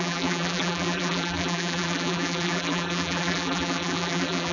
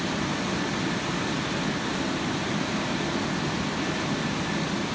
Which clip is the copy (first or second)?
first